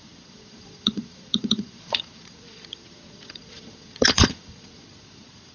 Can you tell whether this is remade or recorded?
remade